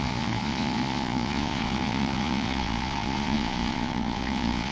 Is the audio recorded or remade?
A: remade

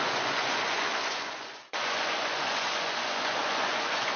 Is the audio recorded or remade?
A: remade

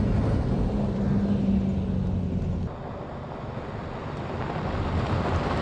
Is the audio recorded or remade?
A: recorded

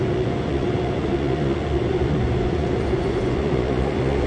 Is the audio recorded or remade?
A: remade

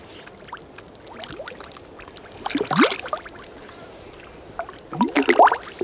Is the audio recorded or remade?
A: recorded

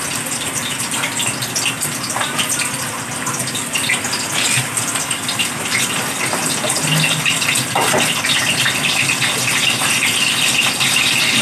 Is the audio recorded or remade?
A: recorded